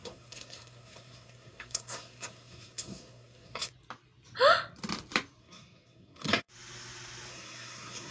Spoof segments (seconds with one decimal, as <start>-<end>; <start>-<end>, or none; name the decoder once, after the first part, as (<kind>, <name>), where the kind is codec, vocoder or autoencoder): 0.0-3.7 (codec, SNAC); 5.4-6.5; 7.3-8.1